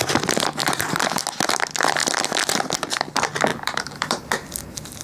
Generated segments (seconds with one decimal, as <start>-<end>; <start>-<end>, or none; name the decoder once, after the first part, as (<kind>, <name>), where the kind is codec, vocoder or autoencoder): 0.6-1.2 (vocoder, BigVGAN v2); 3.5-4.2